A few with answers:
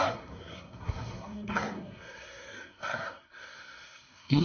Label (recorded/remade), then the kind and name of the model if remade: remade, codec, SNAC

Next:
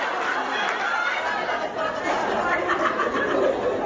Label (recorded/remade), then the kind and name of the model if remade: recorded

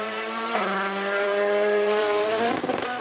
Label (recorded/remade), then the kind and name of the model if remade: remade, vocoder, BigVGAN v2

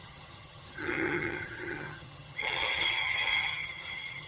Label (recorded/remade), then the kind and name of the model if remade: remade, vocoder, HiFi-GAN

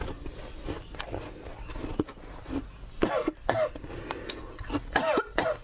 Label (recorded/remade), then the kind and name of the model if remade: recorded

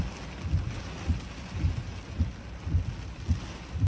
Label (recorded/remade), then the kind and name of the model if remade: recorded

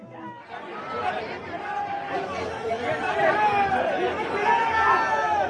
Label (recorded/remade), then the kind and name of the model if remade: recorded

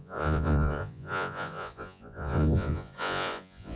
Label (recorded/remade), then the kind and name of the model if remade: remade, vocoder, Vocos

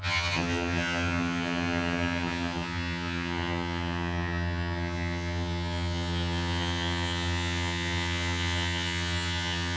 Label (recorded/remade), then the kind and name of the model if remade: remade, vocoder, HiFi-GAN